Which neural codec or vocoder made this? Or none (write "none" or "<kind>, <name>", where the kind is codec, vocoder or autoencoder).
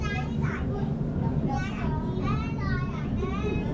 none